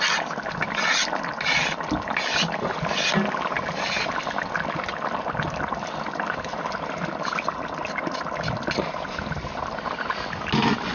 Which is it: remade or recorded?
recorded